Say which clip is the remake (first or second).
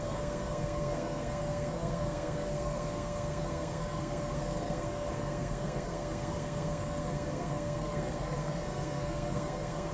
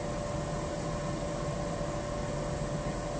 first